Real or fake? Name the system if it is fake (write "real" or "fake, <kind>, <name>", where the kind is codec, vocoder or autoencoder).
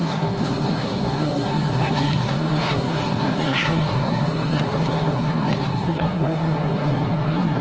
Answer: fake, codec, SNAC